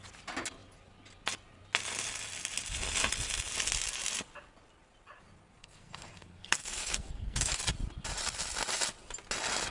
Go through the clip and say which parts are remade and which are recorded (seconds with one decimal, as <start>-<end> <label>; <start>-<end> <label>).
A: 0.0-5.6 recorded; 5.6-7.6 remade; 7.6-9.7 recorded